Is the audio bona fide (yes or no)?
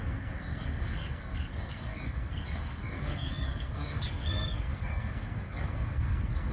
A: no